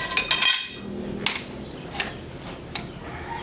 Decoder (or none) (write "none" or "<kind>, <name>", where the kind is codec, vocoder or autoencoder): none